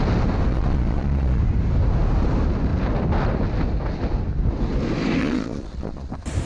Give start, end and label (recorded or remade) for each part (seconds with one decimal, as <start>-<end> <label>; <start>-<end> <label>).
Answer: 0.0-0.5 recorded; 0.5-1.4 remade; 1.4-5.2 recorded; 5.2-6.1 remade; 6.1-6.5 recorded